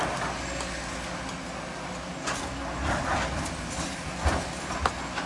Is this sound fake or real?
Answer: real